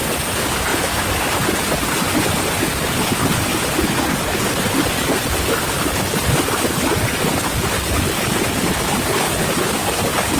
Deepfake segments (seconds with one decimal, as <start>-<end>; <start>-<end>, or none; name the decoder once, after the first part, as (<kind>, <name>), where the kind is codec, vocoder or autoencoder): 0.7-2.9 (vocoder, BigVGAN v2); 3.5-8.5